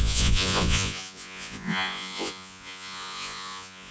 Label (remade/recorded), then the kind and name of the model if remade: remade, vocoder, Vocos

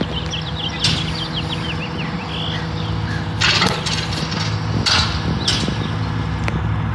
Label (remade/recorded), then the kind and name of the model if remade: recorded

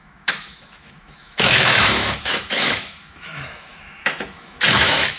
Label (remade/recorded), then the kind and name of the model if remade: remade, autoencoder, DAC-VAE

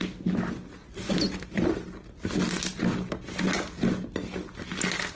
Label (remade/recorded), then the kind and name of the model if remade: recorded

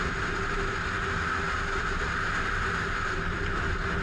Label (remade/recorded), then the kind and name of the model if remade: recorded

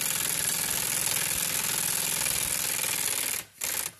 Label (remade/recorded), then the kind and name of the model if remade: recorded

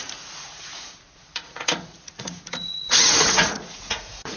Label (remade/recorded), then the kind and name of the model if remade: remade, vocoder, Vocos